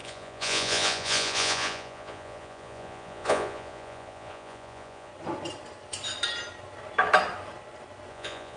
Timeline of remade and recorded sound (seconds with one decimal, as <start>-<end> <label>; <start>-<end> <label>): 0.0-5.1 remade; 5.1-8.1 recorded; 8.1-8.6 remade